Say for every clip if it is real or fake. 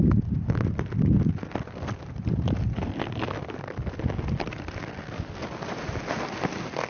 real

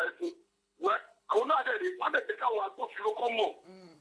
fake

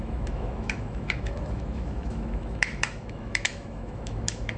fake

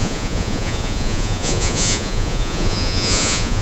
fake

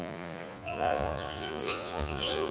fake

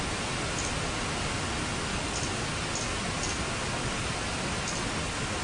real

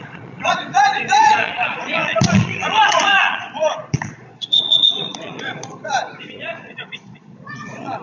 fake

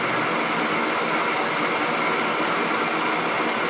real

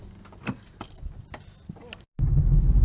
real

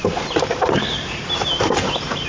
real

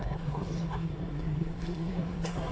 fake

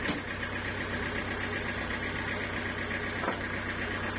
real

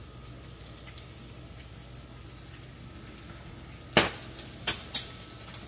real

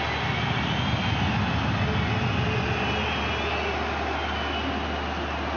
real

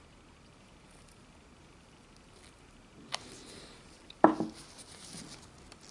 real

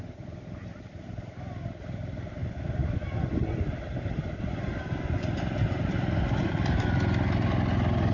real